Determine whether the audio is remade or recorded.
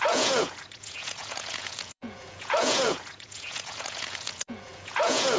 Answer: remade